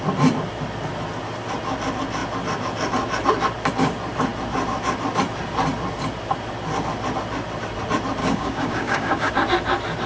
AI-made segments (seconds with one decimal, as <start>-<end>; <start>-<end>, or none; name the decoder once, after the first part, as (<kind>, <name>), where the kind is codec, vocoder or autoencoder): 8.2-9.3 (codec, DAC)